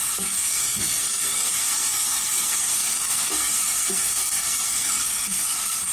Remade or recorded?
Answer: remade